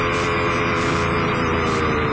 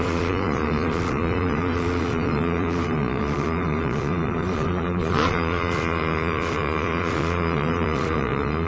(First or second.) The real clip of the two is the first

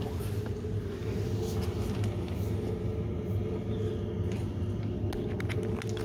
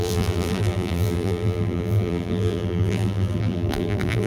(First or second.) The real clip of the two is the first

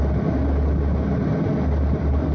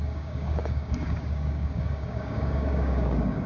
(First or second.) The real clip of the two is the first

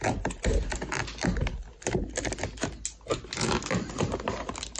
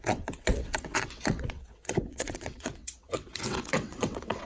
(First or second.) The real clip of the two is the first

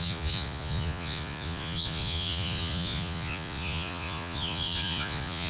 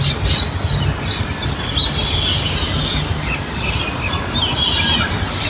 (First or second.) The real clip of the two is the second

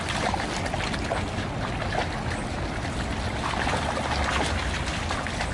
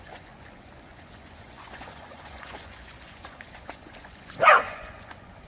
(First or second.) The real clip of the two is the first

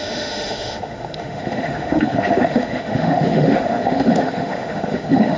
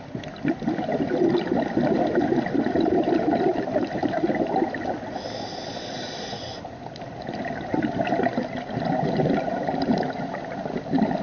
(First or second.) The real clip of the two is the second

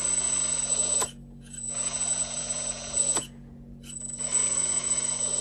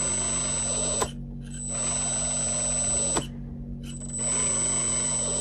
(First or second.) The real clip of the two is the second